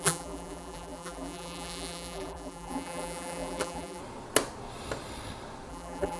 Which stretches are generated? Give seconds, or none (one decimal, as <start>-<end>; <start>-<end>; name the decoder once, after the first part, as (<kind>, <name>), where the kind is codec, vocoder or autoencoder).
0.0-4.0 (vocoder, BigVGAN v2); 5.7-6.2